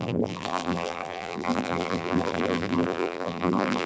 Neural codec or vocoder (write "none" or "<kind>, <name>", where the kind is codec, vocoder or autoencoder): vocoder, BigVGAN v2